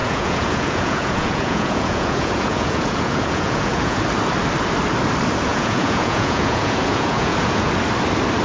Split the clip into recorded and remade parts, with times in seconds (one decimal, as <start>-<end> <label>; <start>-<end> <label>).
0.0-4.0 remade; 4.0-5.5 recorded; 5.5-7.7 remade; 7.7-8.4 recorded